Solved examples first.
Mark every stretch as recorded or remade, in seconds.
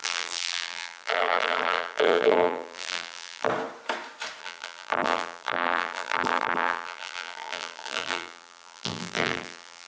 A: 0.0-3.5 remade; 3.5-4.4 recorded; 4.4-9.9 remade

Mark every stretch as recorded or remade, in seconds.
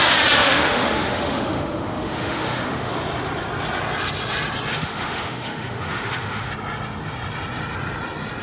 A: 0.0-0.4 recorded; 0.4-2.9 remade; 2.9-4.7 recorded; 4.7-6.5 remade; 6.5-8.4 recorded